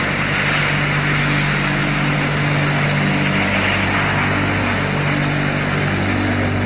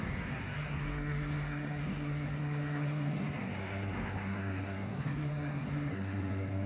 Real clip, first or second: first